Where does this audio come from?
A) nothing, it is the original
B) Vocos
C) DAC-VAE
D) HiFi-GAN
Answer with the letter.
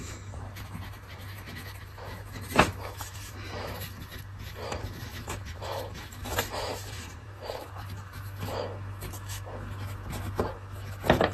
C